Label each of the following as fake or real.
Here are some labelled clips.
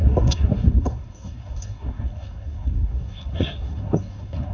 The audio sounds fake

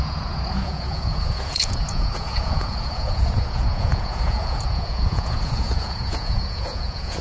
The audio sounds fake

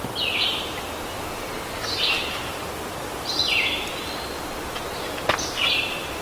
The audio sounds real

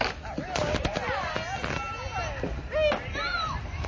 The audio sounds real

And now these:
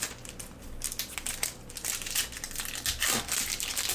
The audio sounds real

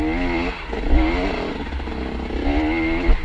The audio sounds real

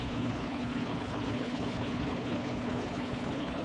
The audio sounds fake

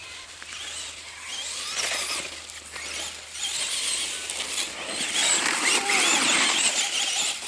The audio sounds real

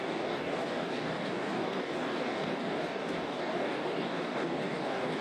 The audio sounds fake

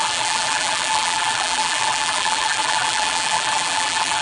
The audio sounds fake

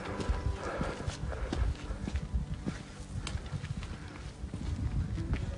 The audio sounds real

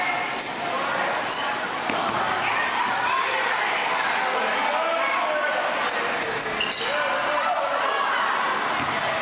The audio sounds real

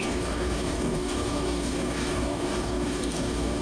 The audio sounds fake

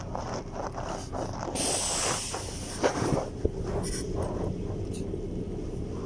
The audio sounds real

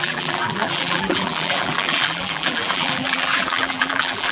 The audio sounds fake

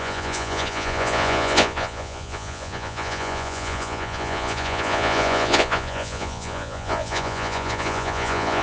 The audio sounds fake